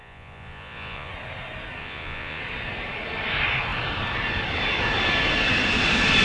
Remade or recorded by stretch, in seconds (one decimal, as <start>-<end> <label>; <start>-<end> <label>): 0.0-1.1 remade; 1.1-1.8 recorded; 1.8-2.4 remade; 2.4-6.2 recorded